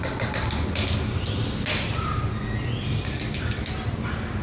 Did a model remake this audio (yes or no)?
no